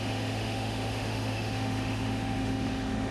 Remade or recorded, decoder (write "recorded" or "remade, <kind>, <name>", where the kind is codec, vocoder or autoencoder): remade, autoencoder, DAC-VAE